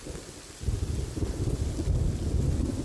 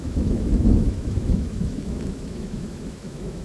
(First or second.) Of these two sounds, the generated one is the second